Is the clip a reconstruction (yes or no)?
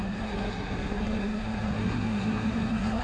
yes